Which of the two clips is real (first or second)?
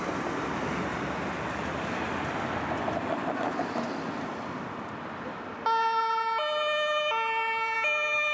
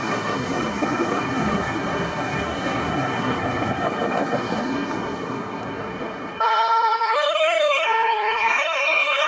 first